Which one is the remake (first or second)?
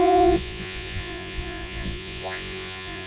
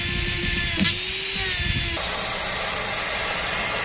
first